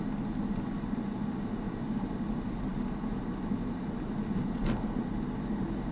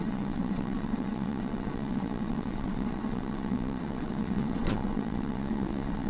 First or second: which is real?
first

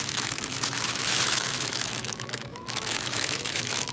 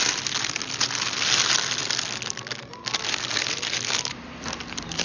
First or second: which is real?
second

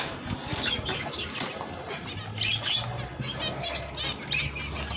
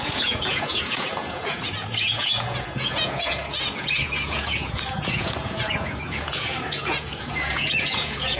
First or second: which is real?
first